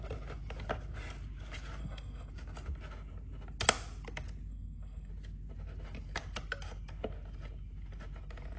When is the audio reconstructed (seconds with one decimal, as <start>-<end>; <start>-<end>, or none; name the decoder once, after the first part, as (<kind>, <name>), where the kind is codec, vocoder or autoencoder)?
1.8-2.3 (codec, SNAC); 4.5-5.1